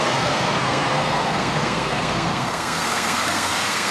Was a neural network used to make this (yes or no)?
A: yes